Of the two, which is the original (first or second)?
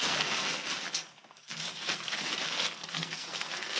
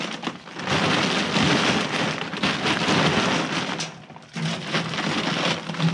second